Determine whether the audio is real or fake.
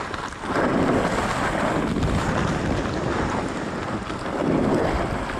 real